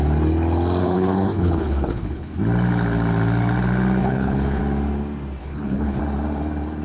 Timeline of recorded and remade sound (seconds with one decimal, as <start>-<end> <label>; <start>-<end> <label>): 0.0-0.8 recorded; 0.8-2.4 remade; 2.4-4.0 recorded; 4.0-4.6 remade; 4.6-5.4 recorded; 5.4-6.0 remade; 6.0-6.8 recorded